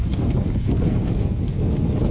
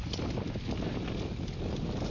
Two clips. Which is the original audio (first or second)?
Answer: second